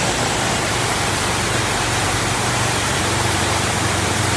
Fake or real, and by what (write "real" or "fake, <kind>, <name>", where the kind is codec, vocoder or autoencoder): fake, vocoder, BigVGAN v2